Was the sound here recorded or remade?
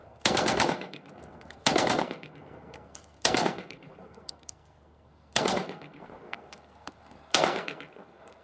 remade